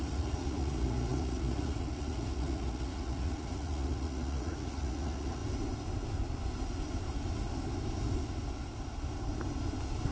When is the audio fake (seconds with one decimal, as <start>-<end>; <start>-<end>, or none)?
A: 0.0-5.4